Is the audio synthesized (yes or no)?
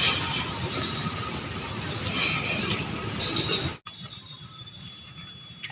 no